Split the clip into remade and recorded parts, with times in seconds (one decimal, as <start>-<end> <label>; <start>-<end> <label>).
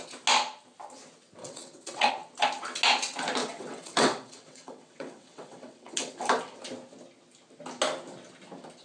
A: 0.0-1.4 recorded; 1.4-2.1 remade; 2.1-3.4 recorded; 3.4-6.1 remade; 6.1-8.8 recorded